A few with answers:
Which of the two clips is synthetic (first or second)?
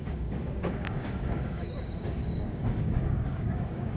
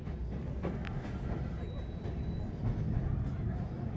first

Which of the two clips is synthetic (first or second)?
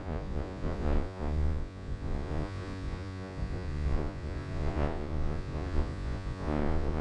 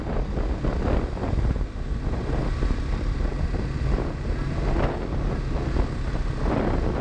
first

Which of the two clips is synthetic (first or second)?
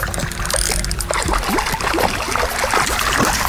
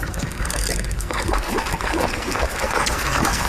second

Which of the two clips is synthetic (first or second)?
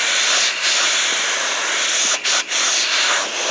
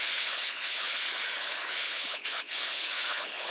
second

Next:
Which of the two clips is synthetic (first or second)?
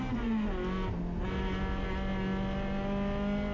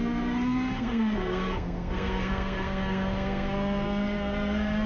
second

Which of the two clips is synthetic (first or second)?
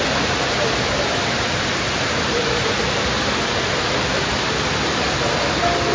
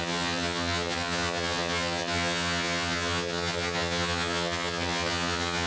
second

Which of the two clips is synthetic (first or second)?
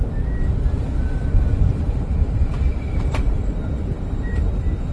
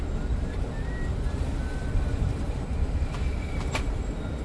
first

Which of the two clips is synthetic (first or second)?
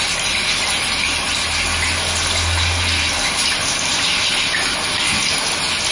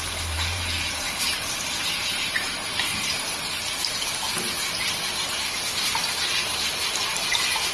second